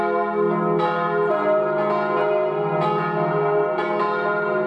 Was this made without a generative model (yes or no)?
yes